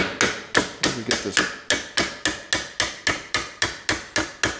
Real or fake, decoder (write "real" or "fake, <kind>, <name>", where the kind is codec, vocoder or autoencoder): real